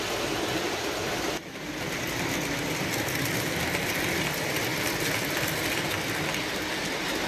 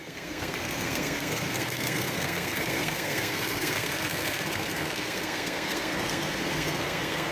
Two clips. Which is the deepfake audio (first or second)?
second